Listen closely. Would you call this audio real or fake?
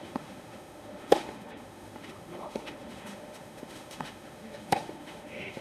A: fake